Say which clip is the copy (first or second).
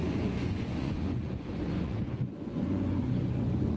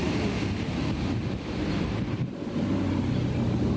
first